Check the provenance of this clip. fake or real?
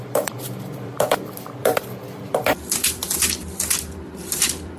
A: fake